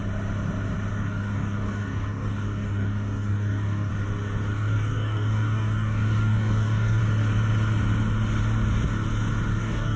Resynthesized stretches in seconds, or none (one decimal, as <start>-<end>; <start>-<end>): 0.9-3.9; 4.5-7.0; 9.5-10.0